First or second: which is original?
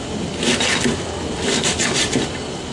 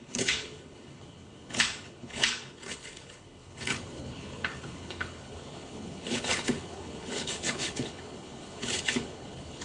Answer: first